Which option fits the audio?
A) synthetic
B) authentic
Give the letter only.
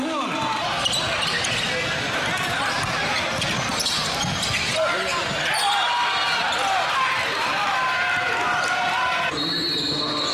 B